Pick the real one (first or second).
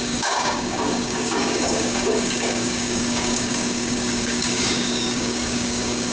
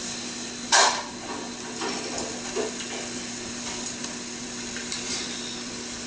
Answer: second